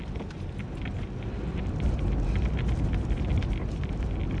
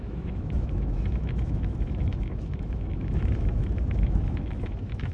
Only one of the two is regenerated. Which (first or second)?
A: second